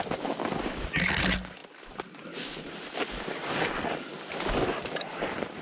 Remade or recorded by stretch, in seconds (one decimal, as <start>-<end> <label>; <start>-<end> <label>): 0.0-5.6 recorded